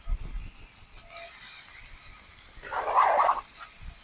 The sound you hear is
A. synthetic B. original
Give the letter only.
B